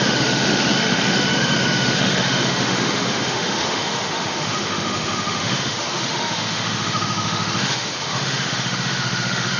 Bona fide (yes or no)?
no